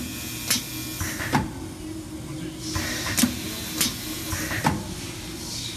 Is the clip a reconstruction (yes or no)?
no